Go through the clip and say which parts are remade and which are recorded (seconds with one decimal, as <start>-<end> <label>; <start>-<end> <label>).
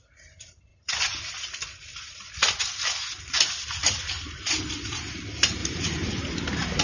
0.0-0.7 remade; 0.7-4.8 recorded; 4.8-6.8 remade